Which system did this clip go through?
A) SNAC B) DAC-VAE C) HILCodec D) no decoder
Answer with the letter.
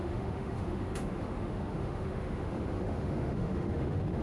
B